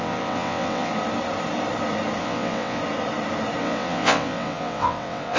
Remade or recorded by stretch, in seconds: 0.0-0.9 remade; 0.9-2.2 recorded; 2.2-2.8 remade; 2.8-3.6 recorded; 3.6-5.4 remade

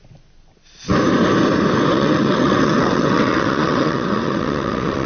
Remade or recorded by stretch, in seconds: 0.0-1.9 recorded; 1.9-5.1 remade

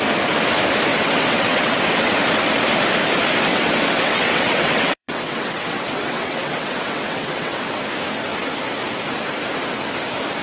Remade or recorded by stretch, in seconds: 0.0-0.9 recorded; 0.9-2.2 remade; 2.2-3.5 recorded; 3.5-7.8 remade; 7.8-10.4 recorded

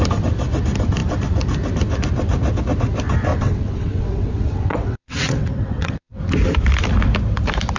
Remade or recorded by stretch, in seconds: 0.0-3.3 recorded; 3.3-6.2 remade; 6.2-7.8 recorded

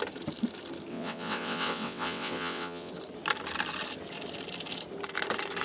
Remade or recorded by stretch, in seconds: 0.0-0.9 recorded; 0.9-2.9 remade; 2.9-5.6 recorded

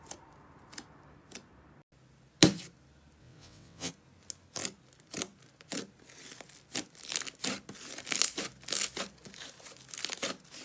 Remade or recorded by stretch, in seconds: 0.0-3.2 recorded; 3.2-3.9 remade; 3.9-10.6 recorded